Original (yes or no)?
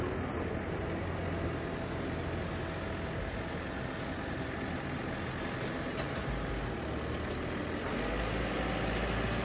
yes